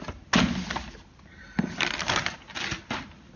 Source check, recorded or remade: recorded